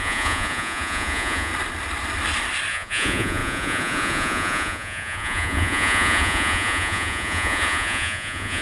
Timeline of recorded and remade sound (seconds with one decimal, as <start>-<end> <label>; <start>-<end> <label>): 0.0-1.5 remade; 1.5-2.7 recorded; 2.7-8.6 remade